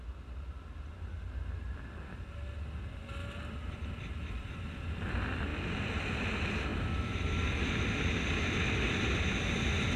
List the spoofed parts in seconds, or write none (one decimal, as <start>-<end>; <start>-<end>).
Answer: none

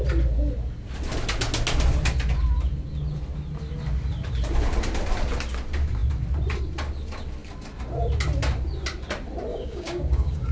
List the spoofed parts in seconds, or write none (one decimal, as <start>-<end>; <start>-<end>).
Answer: 9.5-10.5